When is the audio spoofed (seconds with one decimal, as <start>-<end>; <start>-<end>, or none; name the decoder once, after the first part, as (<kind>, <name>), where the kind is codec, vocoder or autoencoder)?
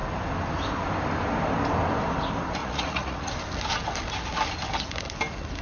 2.6-3.3 (vocoder, Vocos)